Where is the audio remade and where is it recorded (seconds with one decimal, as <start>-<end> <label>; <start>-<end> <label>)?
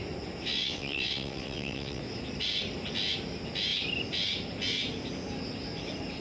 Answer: 0.0-0.5 recorded; 0.5-2.0 remade; 2.0-6.2 recorded